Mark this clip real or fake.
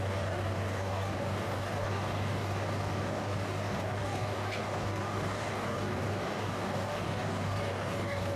fake